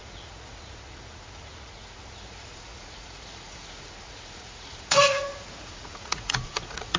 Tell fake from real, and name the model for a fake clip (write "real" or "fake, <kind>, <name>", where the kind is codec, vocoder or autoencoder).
fake, vocoder, Vocos